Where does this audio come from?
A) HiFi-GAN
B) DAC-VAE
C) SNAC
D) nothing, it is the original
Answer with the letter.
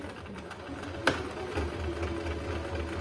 D